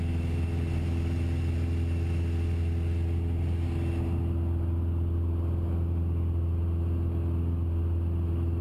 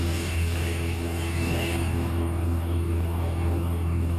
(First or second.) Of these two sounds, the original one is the first